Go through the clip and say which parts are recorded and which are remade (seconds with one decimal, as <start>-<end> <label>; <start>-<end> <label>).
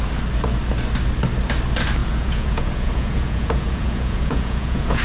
0.0-2.0 recorded; 2.0-5.0 remade